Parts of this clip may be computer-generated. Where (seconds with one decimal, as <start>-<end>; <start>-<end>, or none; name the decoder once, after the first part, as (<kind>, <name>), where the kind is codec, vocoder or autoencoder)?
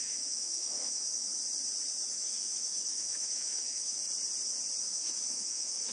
0.0-1.3 (autoencoder, DAC-VAE); 2.1-4.0; 4.8-5.9